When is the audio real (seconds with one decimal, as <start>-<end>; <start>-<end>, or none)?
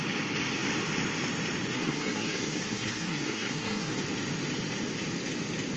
0.0-1.7; 4.0-5.8